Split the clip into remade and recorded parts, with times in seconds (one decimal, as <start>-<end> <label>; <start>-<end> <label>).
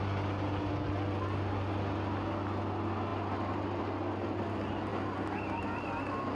0.0-6.4 recorded